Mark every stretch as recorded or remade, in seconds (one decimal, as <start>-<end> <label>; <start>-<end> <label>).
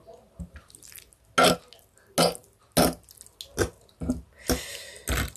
0.0-5.4 recorded